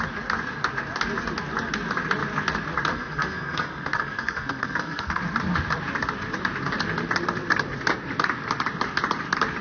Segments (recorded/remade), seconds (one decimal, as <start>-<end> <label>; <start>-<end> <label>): 0.0-2.9 recorded; 2.9-5.2 remade; 5.2-9.6 recorded